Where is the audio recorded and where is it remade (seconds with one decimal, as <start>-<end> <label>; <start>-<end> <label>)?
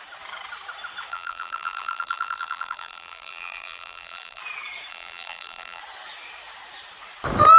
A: 0.0-1.1 recorded; 1.1-4.4 remade; 4.4-4.9 recorded; 4.9-5.8 remade; 5.8-7.6 recorded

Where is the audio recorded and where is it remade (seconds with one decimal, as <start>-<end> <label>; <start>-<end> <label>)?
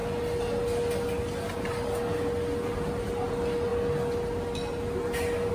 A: 0.0-5.5 recorded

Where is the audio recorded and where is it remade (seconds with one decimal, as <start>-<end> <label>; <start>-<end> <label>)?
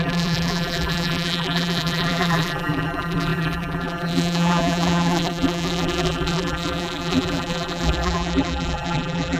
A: 0.0-9.4 remade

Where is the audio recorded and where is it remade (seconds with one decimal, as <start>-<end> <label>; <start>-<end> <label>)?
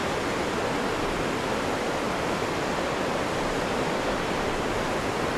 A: 0.0-3.0 recorded; 3.0-5.4 remade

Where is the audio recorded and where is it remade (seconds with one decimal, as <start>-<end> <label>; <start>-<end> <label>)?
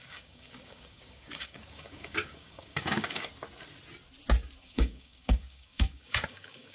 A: 0.0-3.3 remade; 3.3-4.6 recorded; 4.6-6.7 remade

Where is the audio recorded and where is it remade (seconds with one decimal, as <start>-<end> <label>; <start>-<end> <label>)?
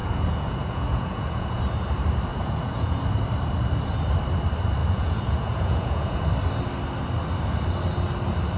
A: 0.0-1.6 remade; 1.6-2.3 recorded; 2.3-3.0 remade; 3.0-4.8 recorded; 4.8-6.2 remade; 6.2-8.6 recorded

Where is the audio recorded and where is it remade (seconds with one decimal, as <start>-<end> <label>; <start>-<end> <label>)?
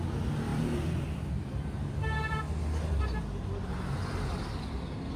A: 0.0-0.5 recorded; 0.5-2.4 remade; 2.4-5.2 recorded